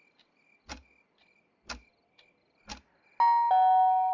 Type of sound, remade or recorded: recorded